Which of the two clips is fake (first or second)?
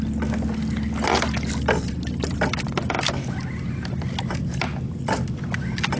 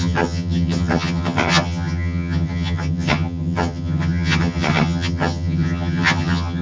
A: second